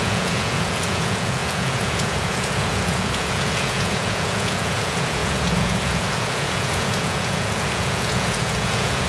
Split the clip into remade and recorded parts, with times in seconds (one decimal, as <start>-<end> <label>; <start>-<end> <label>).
0.0-9.1 remade